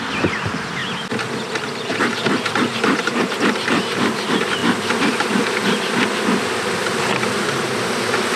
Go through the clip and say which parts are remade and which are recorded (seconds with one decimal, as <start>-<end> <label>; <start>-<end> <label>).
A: 0.0-8.4 recorded